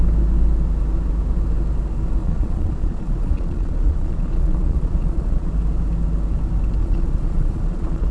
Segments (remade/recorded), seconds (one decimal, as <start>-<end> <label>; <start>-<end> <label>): 0.0-2.2 recorded; 2.2-5.5 remade; 5.5-6.8 recorded; 6.8-8.1 remade

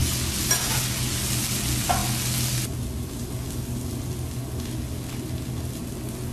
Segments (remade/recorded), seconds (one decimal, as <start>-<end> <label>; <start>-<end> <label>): 0.0-6.3 recorded